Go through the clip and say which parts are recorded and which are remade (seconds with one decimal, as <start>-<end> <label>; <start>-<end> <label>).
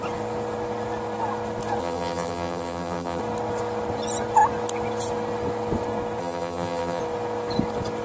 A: 0.0-1.8 recorded; 1.8-3.2 remade; 3.2-6.2 recorded; 6.2-7.0 remade; 7.0-8.0 recorded